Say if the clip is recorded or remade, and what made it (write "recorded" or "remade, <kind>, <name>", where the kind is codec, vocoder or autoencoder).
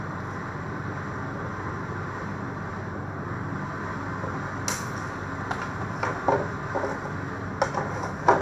recorded